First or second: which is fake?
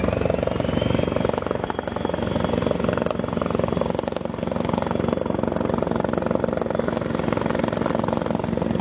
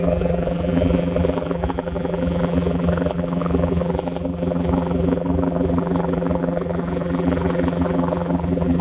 second